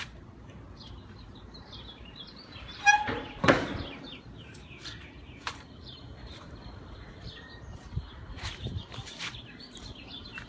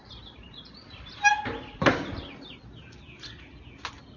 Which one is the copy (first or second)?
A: first